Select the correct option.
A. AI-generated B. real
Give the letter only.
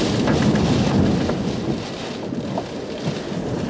B